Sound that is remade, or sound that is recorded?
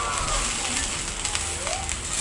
recorded